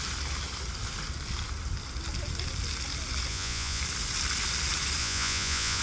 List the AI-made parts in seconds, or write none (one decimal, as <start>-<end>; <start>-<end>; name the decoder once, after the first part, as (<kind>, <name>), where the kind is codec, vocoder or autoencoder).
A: 3.3-3.8 (vocoder, Vocos); 5.0-5.8

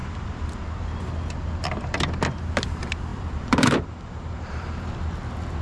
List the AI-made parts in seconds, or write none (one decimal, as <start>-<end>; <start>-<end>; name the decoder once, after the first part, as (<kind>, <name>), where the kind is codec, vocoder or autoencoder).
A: 0.0-0.6 (vocoder, BigVGAN v2); 3.1-4.9

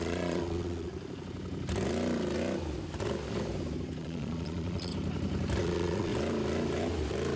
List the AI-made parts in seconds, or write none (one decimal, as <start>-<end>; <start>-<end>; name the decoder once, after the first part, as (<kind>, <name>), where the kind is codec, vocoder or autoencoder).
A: 0.0-0.9 (vocoder, Vocos); 4.0-4.9; 5.6-6.1

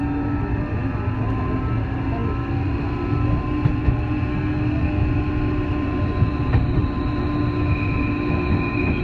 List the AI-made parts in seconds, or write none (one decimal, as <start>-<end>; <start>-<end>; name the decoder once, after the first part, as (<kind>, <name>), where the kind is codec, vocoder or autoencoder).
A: 4.3-4.9 (codec, SNAC)

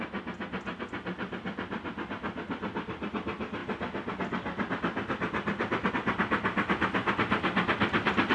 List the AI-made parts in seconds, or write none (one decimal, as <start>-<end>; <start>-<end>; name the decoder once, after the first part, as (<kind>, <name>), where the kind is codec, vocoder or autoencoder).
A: none

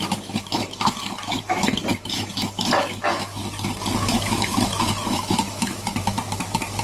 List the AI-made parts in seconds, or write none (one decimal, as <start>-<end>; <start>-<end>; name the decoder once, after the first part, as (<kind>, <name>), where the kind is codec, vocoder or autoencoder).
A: 0.0-3.4 (autoencoder, DAC-VAE); 4.0-6.8